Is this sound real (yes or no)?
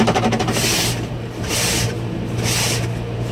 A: yes